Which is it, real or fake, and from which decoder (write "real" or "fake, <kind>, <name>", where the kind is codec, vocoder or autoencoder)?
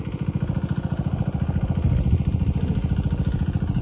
real